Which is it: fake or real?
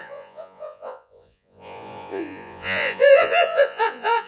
fake